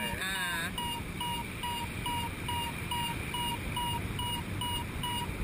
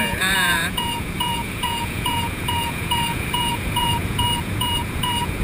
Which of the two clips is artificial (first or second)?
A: second